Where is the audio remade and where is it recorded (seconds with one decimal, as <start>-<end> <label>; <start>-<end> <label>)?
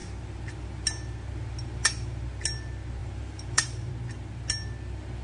0.0-3.0 recorded; 3.0-3.9 remade; 3.9-5.2 recorded